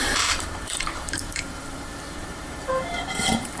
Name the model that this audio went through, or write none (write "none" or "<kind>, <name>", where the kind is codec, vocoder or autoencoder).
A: vocoder, BigVGAN v2